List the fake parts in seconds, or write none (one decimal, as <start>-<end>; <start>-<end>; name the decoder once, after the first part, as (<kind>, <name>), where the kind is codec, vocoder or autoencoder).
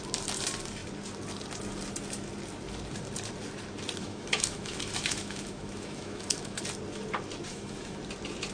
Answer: 4.0-6.6 (autoencoder, DAC-VAE); 7.5-8.0